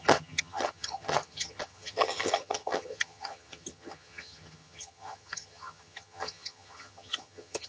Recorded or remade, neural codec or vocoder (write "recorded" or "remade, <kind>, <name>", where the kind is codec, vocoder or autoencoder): remade, vocoder, HiFi-GAN